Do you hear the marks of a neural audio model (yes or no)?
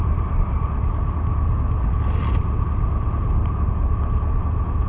no